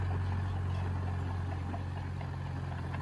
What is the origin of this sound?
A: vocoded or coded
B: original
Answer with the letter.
B